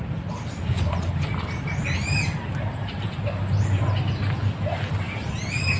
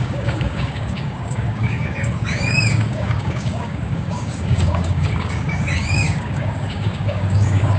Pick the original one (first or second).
first